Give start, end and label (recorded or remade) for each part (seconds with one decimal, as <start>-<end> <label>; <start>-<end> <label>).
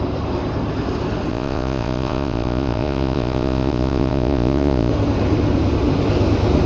0.0-1.3 recorded; 1.3-4.9 remade; 4.9-6.7 recorded